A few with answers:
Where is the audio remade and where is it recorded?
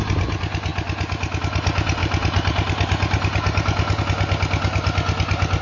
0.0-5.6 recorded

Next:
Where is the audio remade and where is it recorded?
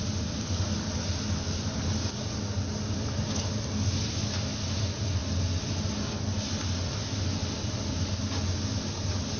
0.0-9.4 recorded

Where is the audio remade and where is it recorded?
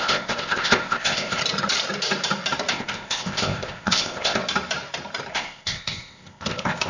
0.0-1.4 remade; 1.4-2.7 recorded; 2.7-4.4 remade; 4.4-5.3 recorded; 5.3-6.9 remade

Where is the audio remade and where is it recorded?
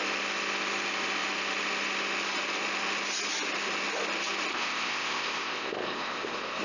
0.0-4.5 recorded; 4.5-6.6 remade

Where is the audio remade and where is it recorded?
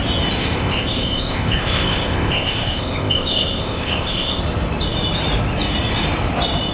0.0-0.4 recorded; 0.4-4.4 remade; 4.4-6.7 recorded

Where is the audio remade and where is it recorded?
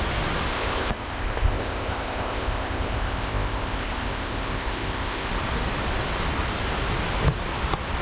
0.0-0.5 recorded; 0.5-5.3 remade; 5.3-8.0 recorded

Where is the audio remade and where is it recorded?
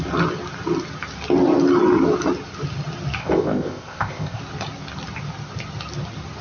0.0-3.2 recorded; 3.2-4.4 remade; 4.4-6.4 recorded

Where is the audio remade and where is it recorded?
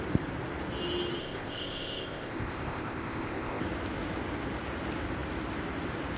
0.0-1.2 recorded; 1.2-3.6 remade; 3.6-6.2 recorded